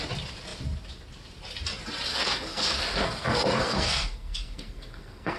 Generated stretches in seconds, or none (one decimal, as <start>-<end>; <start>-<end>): 2.1-5.4